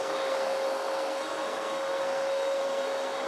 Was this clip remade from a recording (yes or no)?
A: yes